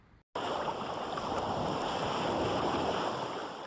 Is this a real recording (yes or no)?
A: yes